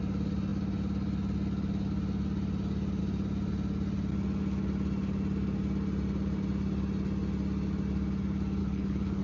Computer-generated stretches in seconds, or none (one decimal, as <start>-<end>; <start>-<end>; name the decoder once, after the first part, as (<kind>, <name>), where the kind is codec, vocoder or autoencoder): 8.6-9.2 (codec, HILCodec)